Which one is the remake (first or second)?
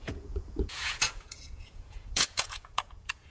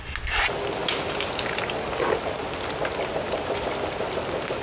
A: first